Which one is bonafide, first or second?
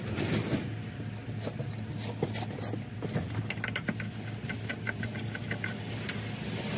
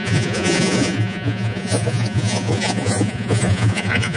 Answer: first